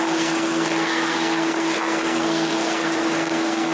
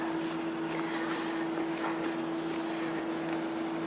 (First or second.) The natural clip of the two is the second